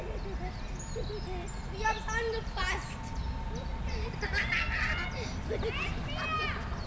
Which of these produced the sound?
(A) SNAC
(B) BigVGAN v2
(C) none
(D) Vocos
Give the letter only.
C